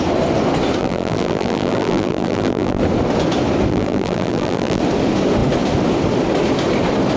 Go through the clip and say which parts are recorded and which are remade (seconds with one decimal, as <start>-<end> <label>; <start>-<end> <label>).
0.0-0.8 recorded; 0.8-2.8 remade; 2.8-3.7 recorded; 3.7-4.8 remade; 4.8-7.2 recorded